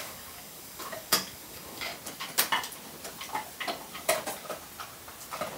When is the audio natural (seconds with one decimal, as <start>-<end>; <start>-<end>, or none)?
1.9-5.6